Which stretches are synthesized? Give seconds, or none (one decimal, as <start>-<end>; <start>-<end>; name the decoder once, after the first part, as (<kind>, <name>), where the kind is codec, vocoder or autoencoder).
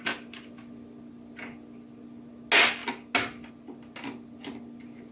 none